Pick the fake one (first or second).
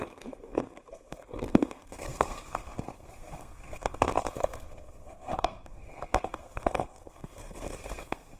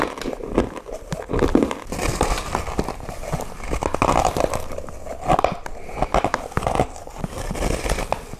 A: first